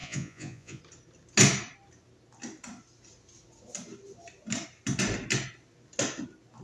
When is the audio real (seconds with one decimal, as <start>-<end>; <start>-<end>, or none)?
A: 0.8-6.6